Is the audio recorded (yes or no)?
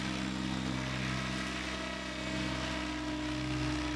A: yes